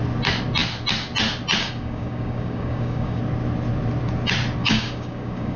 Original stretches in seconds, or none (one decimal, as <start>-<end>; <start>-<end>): 0.0-1.6; 3.2-4.6